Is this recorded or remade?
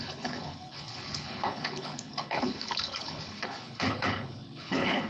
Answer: remade